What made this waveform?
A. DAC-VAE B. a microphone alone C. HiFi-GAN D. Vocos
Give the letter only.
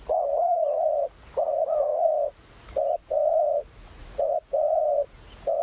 D